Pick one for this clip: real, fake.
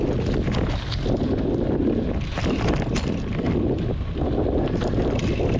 real